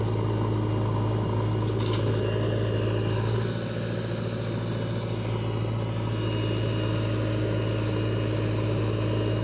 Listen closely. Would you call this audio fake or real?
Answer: real